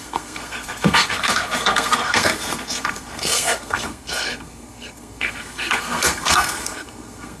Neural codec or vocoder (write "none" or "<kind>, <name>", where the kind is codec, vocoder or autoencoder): codec, SNAC